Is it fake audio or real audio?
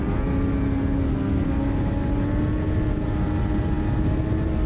real